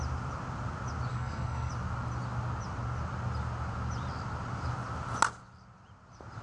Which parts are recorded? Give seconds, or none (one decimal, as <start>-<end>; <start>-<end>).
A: 0.0-1.1; 1.7-6.4